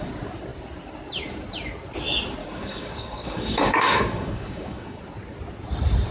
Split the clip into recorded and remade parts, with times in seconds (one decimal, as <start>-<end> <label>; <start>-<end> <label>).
0.0-2.4 recorded; 2.4-5.0 remade; 5.0-6.1 recorded